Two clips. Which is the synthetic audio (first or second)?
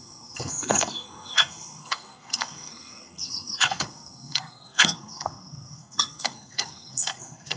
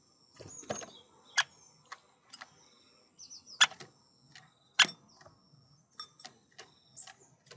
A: first